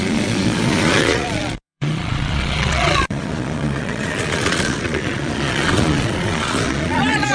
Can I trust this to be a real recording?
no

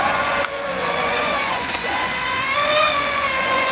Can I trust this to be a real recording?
no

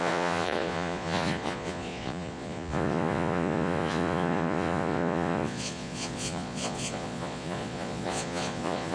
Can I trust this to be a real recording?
no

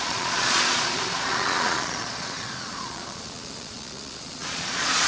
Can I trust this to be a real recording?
no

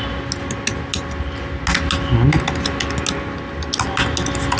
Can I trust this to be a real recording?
yes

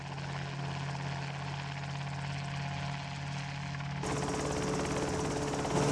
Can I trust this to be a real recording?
yes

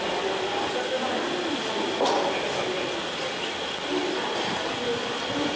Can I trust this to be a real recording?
yes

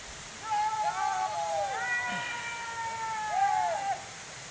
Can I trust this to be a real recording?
yes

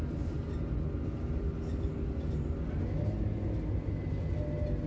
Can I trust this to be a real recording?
yes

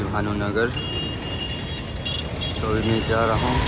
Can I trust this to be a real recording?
yes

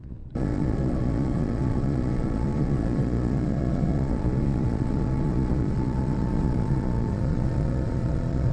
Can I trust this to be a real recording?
no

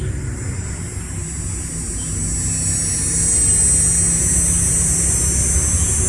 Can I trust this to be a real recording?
yes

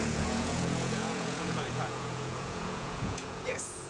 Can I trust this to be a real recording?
no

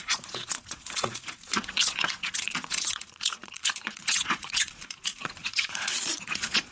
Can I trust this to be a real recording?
no